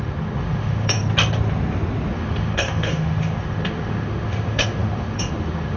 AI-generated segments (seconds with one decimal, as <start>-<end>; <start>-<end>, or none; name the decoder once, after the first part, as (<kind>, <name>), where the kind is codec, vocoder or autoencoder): 0.0-1.0 (autoencoder, DAC-VAE); 2.1-5.8